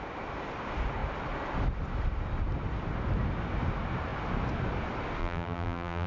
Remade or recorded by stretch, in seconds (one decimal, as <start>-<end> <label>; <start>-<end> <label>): 0.0-5.2 recorded; 5.2-6.1 remade